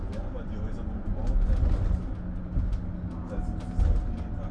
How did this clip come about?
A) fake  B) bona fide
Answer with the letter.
B